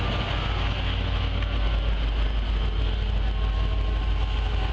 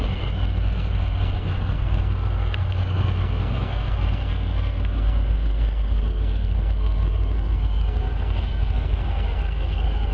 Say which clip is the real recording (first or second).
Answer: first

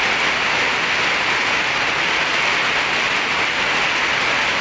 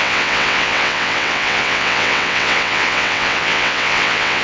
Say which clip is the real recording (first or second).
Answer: first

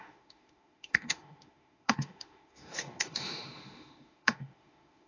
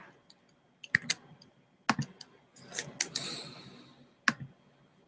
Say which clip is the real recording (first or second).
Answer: second